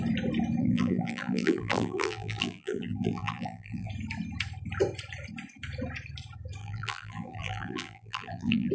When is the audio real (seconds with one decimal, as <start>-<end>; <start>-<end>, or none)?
0.0-0.6; 3.9-6.6